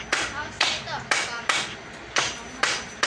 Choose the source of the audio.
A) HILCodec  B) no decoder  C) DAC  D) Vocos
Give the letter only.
B